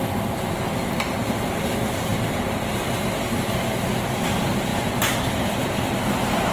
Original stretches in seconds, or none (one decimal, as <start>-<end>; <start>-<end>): 0.0-6.5